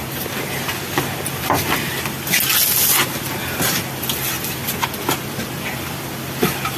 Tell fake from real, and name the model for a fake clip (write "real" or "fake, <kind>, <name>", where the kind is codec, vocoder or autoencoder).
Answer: real